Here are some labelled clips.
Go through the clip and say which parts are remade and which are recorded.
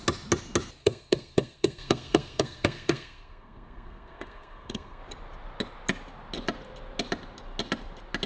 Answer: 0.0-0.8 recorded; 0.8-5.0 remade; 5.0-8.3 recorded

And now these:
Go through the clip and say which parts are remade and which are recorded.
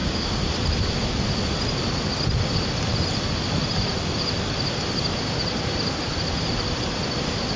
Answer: 0.0-0.5 remade; 0.5-7.6 recorded